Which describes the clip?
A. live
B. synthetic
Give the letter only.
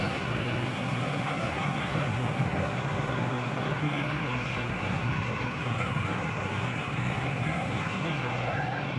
B